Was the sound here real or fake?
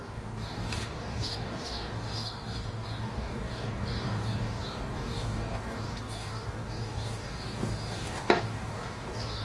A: fake